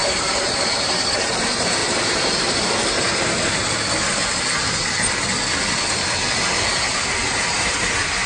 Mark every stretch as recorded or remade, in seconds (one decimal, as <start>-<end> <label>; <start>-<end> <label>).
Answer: 0.0-3.6 remade; 3.6-6.9 recorded; 6.9-8.3 remade

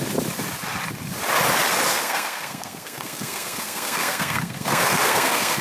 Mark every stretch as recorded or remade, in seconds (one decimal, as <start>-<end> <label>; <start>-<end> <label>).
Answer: 0.0-1.9 recorded; 1.9-5.6 remade

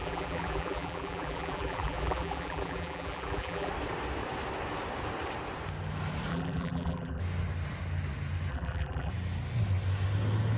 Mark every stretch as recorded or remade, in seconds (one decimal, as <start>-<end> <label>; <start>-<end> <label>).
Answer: 0.0-3.7 remade; 3.7-6.3 recorded; 6.3-7.2 remade; 7.2-8.5 recorded; 8.5-9.1 remade; 9.1-10.6 recorded